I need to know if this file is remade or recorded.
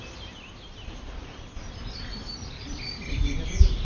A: recorded